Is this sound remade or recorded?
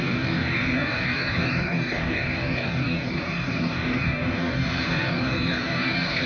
remade